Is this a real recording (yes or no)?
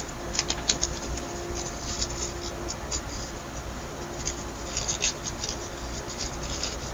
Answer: yes